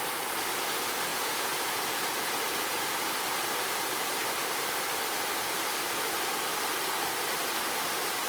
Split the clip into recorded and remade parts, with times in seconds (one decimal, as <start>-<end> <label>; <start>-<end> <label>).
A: 0.0-1.1 recorded; 1.1-2.8 remade; 2.8-8.3 recorded